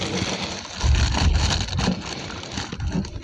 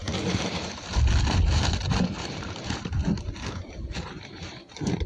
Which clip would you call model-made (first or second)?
second